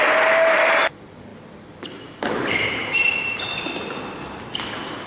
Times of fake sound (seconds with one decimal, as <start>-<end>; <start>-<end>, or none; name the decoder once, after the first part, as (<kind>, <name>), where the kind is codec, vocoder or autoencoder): none

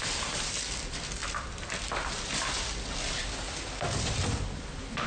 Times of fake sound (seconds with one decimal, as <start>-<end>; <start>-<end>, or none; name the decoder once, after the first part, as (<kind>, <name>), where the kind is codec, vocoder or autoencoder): none

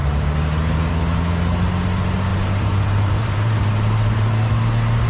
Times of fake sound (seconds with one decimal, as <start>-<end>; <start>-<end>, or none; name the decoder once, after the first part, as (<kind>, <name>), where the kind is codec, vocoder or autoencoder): 2.3-4.5 (vocoder, BigVGAN v2)